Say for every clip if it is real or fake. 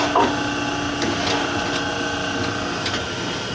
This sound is real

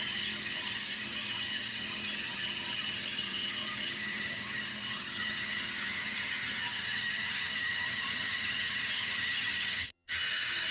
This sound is fake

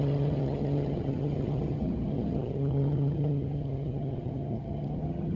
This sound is fake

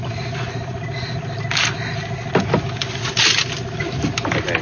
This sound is real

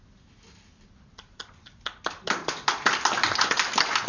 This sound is real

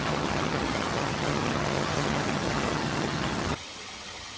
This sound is fake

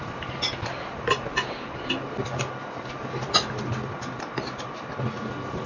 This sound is real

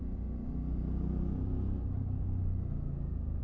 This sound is real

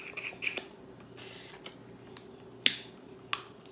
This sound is real